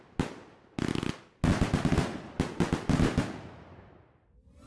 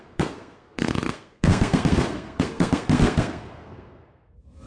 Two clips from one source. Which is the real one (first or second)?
first